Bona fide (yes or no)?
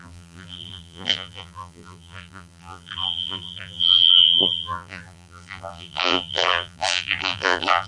no